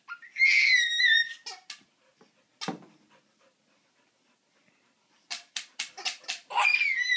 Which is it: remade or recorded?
recorded